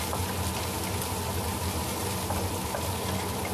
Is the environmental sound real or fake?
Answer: real